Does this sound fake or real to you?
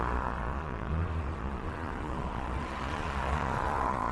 fake